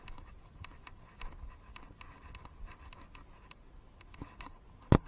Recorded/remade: recorded